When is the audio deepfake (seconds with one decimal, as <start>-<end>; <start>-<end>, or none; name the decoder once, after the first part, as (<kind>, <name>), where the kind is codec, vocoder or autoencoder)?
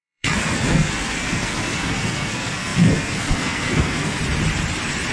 0.0-4.2 (codec, SNAC)